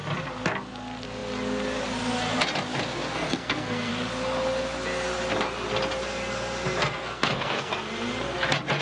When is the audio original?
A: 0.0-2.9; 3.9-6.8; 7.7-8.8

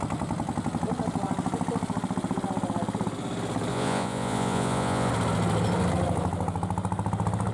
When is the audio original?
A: 0.0-3.7; 5.1-7.5

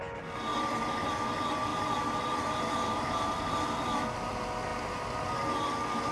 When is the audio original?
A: 0.0-1.7; 4.3-4.7; 5.3-6.1

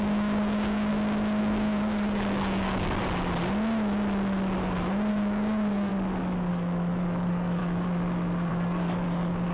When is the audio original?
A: 0.9-1.4; 3.0-5.1; 5.9-6.5; 7.6-8.5

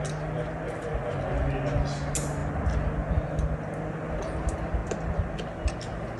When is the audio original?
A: 0.0-6.2

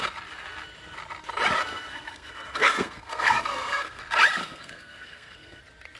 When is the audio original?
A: 0.0-1.6; 4.0-4.4; 5.6-6.0

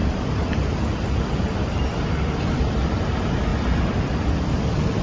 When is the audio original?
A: 3.0-3.5

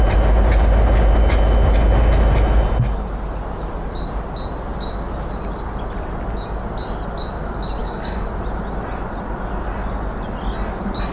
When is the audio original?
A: 0.0-7.8; 8.3-11.1